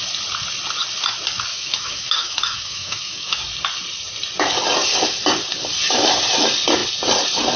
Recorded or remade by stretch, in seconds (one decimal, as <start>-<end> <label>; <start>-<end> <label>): 0.0-1.5 recorded; 1.5-3.4 remade; 3.4-7.6 recorded